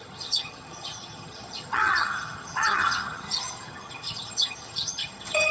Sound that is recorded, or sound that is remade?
remade